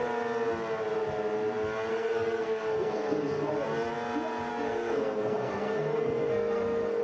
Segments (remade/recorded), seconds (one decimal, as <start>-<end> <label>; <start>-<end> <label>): 0.0-1.9 recorded; 1.9-3.5 remade; 3.5-4.5 recorded; 4.5-7.0 remade